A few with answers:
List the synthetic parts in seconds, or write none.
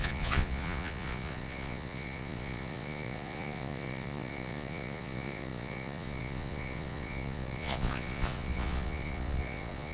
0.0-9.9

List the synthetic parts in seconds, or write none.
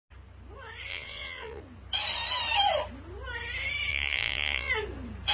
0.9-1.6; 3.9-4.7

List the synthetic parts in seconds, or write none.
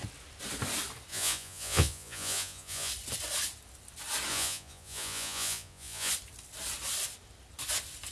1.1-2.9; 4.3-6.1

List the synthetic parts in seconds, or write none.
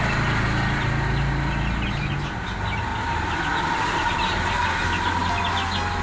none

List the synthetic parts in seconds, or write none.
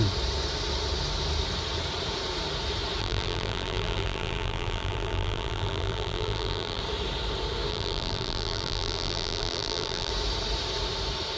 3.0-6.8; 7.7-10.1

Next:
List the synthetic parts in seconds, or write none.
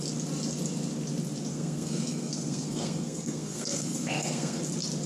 1.5-4.6